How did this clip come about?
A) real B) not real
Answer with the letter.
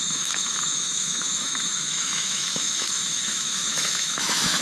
B